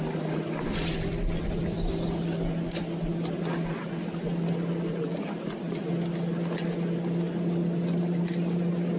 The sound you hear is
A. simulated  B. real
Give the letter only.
B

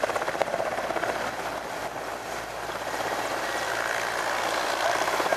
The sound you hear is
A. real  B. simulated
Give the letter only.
A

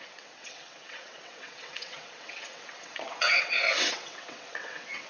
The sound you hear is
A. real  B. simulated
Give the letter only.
B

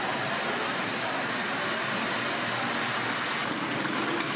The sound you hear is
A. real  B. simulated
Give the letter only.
A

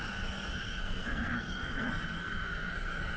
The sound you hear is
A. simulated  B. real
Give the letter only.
A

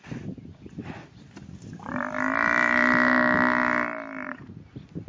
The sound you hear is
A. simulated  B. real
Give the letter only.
B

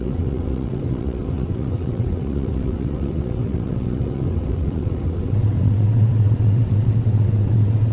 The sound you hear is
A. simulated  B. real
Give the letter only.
A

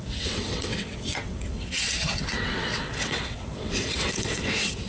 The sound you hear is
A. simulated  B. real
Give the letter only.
A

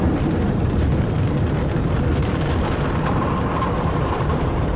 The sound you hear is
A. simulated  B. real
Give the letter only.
A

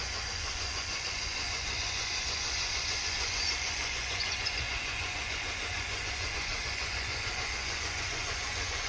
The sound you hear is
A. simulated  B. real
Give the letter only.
A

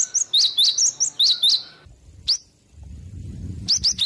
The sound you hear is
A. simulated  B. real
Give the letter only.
B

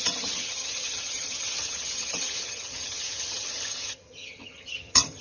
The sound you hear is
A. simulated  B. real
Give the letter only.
A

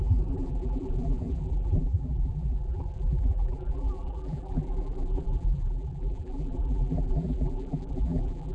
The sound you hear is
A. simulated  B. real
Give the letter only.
A